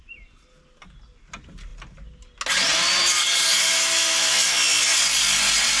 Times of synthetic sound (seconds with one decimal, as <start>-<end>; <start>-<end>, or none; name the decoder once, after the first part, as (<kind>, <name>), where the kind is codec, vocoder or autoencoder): none